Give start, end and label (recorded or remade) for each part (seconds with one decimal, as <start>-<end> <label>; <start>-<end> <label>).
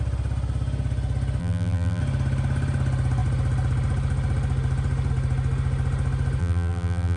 0.0-1.4 recorded; 1.4-2.0 remade; 2.0-6.4 recorded; 6.4-7.2 remade